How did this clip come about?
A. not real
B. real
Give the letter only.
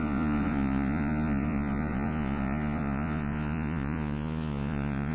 A